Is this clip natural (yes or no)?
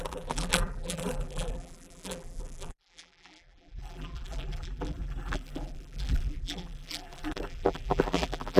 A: no